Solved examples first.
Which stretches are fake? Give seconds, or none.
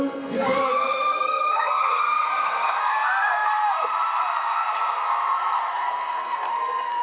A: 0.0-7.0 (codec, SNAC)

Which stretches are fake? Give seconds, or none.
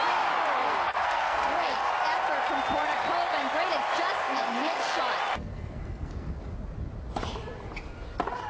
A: 0.6-1.9 (codec, SNAC); 4.2-5.0; 5.4-6.4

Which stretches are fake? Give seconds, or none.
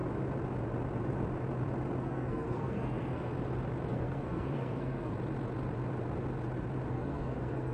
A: 2.0-3.3 (codec, SNAC); 3.9-5.1; 6.9-7.7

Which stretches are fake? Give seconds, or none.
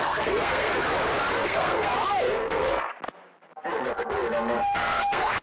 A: 0.0-0.7 (codec, SNAC); 1.3-2.9; 3.7-5.4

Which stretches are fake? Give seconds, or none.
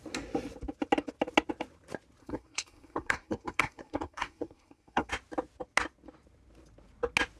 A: 2.2-5.1 (codec, SNAC)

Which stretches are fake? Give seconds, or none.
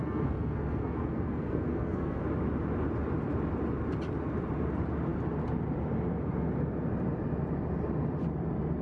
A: 0.0-2.2 (codec, SNAC)